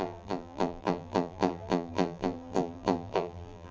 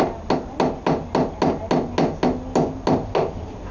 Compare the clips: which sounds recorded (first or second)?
second